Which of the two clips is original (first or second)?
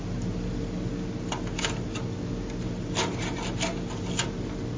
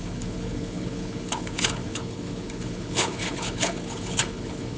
first